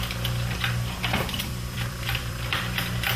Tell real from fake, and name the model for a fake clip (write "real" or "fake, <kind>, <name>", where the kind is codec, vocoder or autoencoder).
fake, vocoder, BigVGAN v2